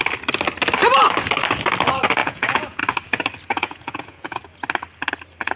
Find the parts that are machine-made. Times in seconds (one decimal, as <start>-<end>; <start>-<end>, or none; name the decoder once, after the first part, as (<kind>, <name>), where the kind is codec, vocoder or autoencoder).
2.2-2.8 (vocoder, Vocos); 3.5-4.4